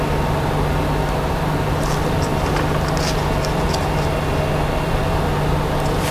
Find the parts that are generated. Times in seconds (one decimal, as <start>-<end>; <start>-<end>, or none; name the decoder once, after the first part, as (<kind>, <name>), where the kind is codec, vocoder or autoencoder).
none